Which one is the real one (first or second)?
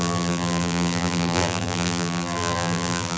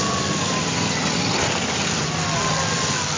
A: second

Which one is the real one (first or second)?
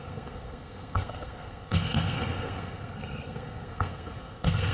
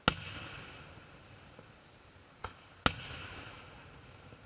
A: second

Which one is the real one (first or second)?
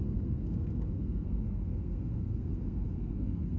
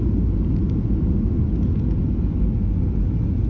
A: second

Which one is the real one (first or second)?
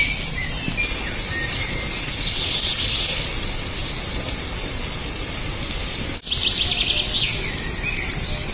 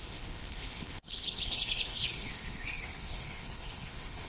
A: first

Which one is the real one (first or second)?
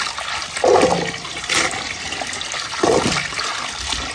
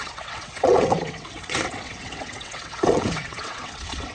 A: first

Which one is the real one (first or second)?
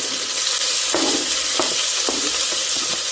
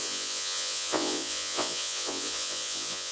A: first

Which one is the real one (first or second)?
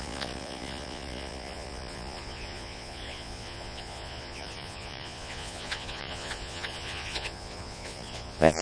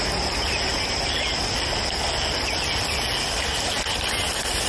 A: second